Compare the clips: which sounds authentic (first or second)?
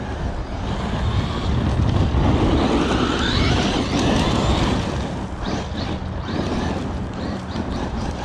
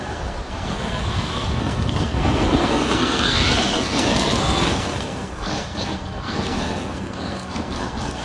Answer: first